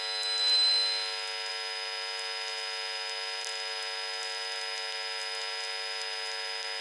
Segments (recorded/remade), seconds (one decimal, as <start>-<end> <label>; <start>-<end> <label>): 0.0-6.8 recorded